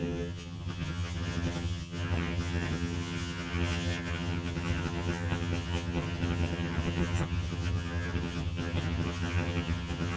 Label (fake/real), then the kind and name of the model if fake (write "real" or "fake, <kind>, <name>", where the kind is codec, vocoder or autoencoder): fake, vocoder, HiFi-GAN